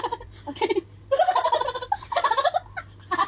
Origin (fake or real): real